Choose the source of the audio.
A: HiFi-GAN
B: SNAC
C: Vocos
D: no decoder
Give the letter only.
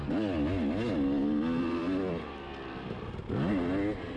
D